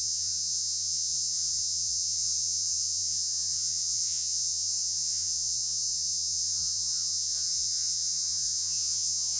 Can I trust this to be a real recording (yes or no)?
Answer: no